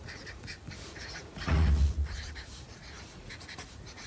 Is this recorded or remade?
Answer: remade